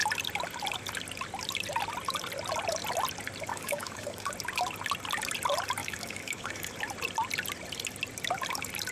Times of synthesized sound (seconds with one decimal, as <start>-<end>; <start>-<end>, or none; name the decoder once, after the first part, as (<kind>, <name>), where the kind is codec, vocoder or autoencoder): 3.5-4.3 (codec, DAC); 5.8-6.7